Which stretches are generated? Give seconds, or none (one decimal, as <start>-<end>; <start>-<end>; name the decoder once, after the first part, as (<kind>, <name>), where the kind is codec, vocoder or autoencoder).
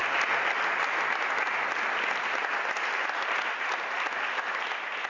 none